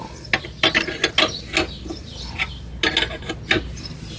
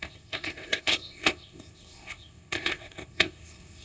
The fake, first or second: second